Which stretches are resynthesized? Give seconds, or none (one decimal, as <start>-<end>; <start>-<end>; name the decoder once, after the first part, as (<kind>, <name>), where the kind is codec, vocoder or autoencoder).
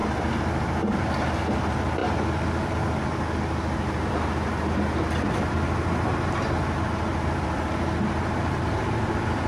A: 7.1-7.8 (vocoder, BigVGAN v2)